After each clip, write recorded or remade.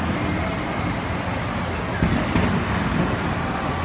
recorded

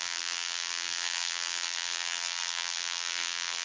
remade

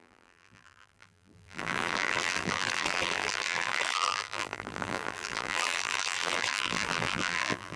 remade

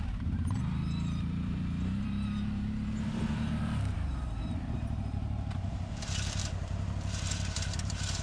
remade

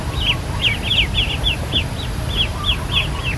recorded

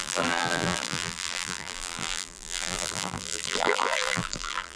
remade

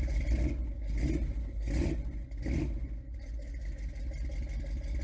recorded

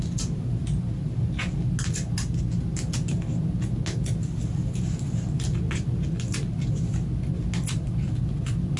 recorded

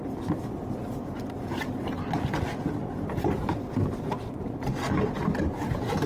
recorded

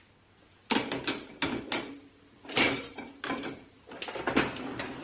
remade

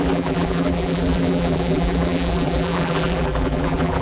remade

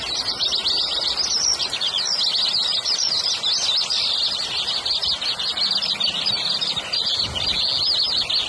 recorded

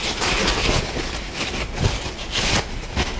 recorded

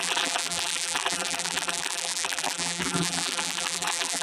remade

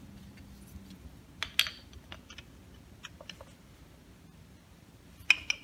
recorded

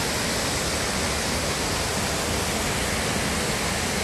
recorded